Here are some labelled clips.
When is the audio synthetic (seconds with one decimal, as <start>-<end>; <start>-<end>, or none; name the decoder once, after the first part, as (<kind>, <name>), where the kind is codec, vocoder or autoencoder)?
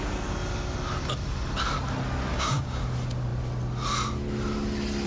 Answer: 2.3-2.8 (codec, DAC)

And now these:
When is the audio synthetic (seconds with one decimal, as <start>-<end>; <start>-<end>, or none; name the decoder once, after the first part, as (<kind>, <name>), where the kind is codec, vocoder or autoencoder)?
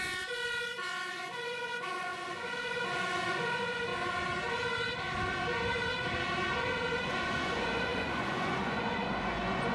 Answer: 0.0-3.9 (vocoder, Vocos); 7.0-9.7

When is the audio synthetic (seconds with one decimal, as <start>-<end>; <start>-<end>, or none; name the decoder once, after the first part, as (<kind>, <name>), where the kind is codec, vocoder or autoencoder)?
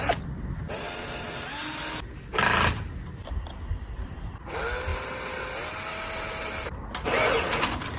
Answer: none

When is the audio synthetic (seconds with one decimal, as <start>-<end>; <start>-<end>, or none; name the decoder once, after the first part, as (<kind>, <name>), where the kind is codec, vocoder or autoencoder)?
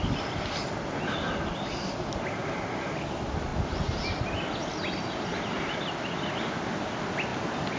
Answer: none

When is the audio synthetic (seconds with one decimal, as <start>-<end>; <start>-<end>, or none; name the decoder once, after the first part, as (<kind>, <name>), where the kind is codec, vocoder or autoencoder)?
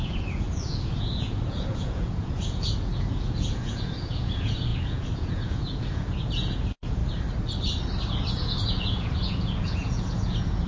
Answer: 0.0-7.0 (vocoder, Vocos); 8.3-10.7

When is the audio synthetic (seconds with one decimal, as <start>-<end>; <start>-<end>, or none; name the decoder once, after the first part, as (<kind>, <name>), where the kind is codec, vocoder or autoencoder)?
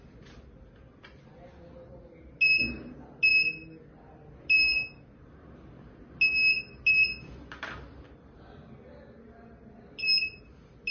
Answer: none